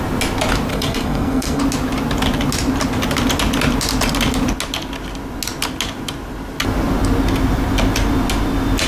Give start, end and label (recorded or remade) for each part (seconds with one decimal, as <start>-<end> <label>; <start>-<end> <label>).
0.0-0.7 recorded; 0.7-1.6 remade; 1.6-8.9 recorded

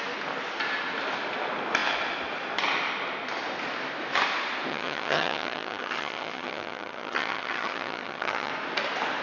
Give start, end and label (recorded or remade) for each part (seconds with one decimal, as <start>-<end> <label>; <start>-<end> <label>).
0.0-4.7 recorded; 4.7-8.5 remade; 8.5-9.2 recorded

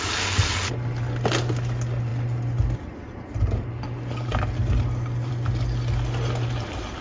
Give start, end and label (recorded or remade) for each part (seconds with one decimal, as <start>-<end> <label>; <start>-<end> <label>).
0.0-7.0 recorded

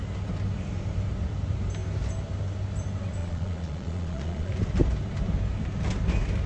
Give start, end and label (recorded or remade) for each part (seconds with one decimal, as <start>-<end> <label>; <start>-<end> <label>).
0.0-3.2 recorded; 3.2-4.5 remade; 4.5-6.5 recorded

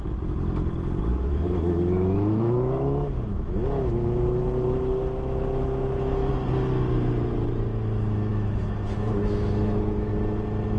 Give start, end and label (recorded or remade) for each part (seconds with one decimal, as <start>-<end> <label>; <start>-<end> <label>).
0.0-1.1 recorded; 1.1-6.3 remade; 6.3-8.3 recorded; 8.3-10.1 remade; 10.1-10.8 recorded

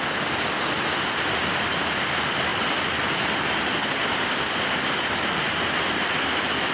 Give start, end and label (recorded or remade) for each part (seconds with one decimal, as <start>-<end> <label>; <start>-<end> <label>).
0.0-6.7 recorded

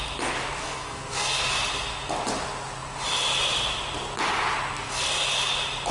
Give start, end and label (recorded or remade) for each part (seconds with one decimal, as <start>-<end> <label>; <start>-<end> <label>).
0.0-0.6 recorded; 0.6-1.5 remade; 1.5-5.9 recorded